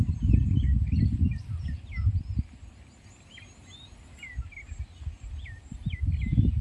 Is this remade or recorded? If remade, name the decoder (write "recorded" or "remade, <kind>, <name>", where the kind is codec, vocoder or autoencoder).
recorded